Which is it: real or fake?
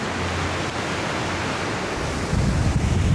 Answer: real